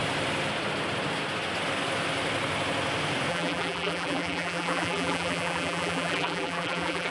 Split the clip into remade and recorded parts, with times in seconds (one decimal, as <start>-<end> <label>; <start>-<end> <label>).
0.0-3.3 recorded; 3.3-7.1 remade